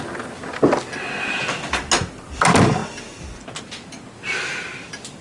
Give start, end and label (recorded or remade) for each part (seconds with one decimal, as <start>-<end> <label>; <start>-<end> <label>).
0.0-5.2 recorded